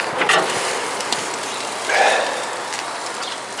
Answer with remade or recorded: recorded